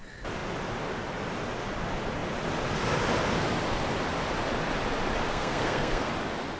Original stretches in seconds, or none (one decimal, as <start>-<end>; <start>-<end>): 0.0-5.3; 6.1-6.6